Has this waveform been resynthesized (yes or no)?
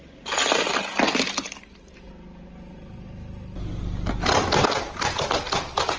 no